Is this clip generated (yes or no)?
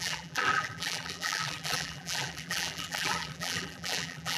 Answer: yes